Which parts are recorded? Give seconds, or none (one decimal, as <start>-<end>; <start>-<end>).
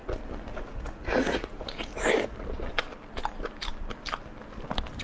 0.0-0.7; 1.9-5.0